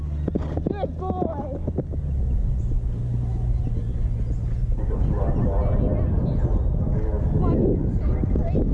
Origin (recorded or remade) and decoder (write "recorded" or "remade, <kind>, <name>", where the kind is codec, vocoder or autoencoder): recorded